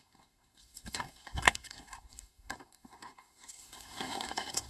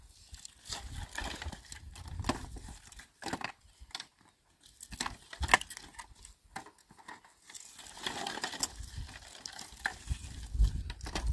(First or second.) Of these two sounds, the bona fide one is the second